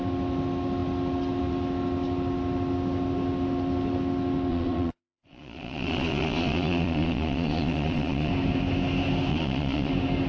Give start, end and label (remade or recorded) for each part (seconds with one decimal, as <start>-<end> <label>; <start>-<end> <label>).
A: 0.0-4.5 recorded; 4.5-8.3 remade; 8.3-9.3 recorded; 9.3-9.9 remade; 9.9-10.3 recorded

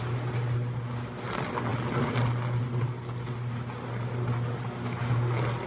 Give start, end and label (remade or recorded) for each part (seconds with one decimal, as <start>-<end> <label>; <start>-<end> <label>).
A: 0.0-5.7 recorded

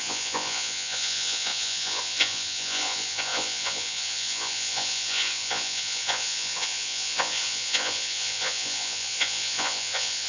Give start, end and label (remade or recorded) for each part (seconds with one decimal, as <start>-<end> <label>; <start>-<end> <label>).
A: 0.0-10.3 remade